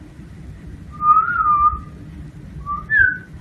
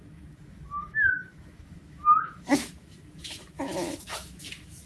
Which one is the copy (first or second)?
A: second